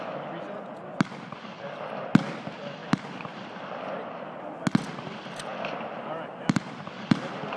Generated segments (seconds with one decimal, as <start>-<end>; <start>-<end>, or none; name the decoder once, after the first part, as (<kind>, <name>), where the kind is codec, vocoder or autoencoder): none